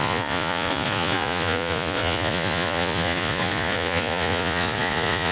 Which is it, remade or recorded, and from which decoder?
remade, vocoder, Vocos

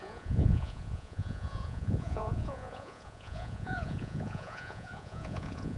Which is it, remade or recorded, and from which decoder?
remade, vocoder, Vocos